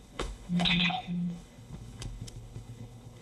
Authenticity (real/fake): fake